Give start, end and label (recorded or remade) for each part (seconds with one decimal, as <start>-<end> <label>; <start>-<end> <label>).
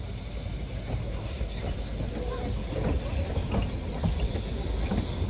0.0-1.0 recorded; 1.0-1.6 remade; 1.6-5.3 recorded